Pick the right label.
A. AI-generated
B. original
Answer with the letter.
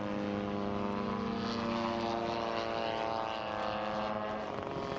B